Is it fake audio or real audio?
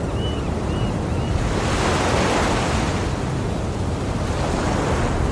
real